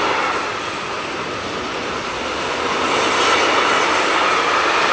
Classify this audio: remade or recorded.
recorded